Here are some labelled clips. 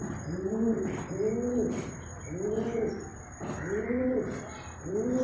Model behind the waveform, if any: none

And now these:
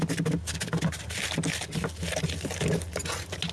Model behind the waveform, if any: none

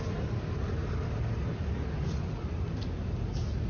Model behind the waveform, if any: none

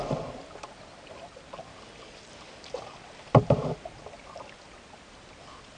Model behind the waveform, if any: none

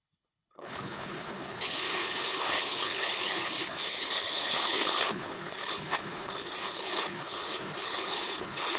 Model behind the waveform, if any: codec, HILCodec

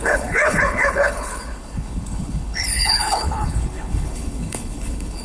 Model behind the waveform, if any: codec, HILCodec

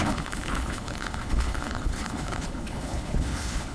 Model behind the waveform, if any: codec, HILCodec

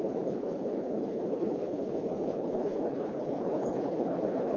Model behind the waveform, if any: codec, HILCodec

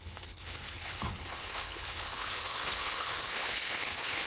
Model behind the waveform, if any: codec, HILCodec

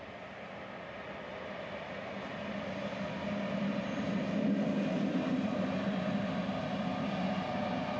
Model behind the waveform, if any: none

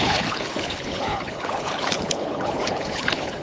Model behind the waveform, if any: codec, HILCodec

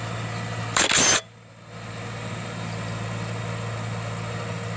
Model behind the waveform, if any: none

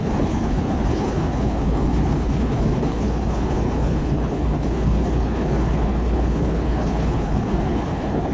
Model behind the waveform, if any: codec, HILCodec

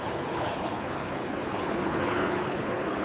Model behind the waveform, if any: codec, HILCodec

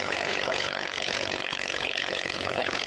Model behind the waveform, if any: codec, HILCodec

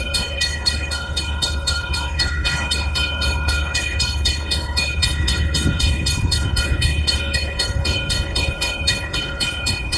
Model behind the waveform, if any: codec, HILCodec